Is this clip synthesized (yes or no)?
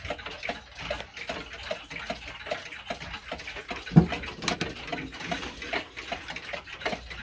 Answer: no